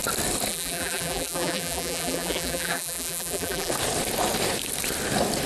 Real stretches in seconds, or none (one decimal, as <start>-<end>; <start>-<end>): 0.0-0.5; 3.7-5.5